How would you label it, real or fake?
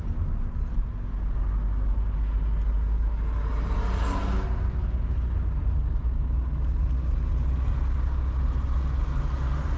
real